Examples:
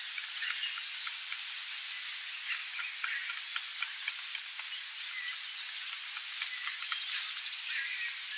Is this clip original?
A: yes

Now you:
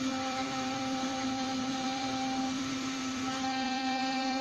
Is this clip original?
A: no